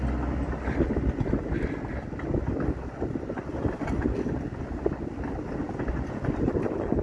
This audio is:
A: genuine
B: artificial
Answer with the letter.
A